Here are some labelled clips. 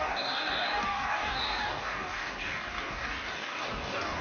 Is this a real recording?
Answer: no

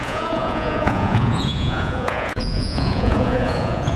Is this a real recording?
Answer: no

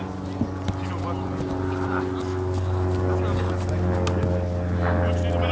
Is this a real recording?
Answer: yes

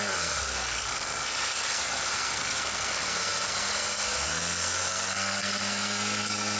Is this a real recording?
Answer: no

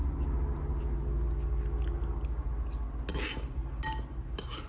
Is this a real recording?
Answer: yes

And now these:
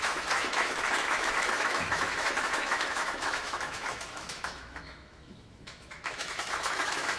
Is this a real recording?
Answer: no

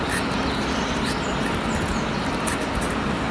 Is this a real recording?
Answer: yes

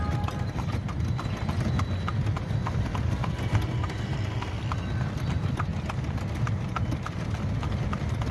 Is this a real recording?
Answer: yes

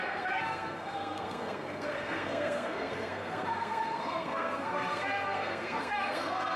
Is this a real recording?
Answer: no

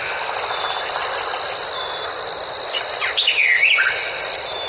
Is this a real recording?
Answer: yes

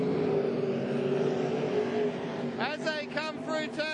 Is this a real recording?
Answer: yes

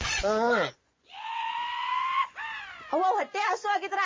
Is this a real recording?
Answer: no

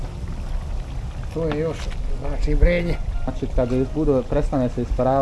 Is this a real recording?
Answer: yes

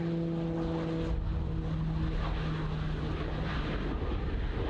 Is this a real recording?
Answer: yes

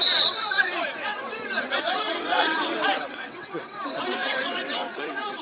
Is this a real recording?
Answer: no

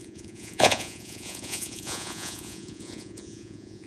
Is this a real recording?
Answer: no